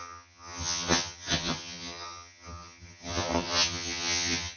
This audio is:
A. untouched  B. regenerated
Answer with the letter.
B